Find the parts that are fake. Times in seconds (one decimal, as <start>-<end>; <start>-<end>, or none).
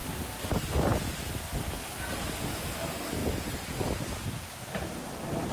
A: 0.0-1.7